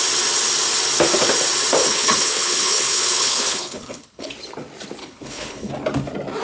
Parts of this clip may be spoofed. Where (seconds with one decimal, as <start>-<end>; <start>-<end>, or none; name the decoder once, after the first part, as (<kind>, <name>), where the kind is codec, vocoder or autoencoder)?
1.8-4.3 (codec, HILCodec); 5.0-5.7